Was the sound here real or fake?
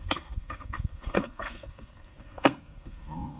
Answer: fake